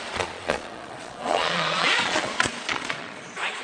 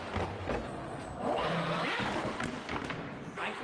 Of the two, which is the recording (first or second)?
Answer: second